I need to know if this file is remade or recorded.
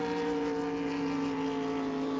recorded